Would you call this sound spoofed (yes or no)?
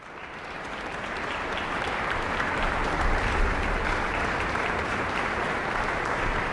yes